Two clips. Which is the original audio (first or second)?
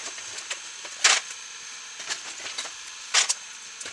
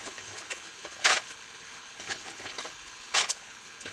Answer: first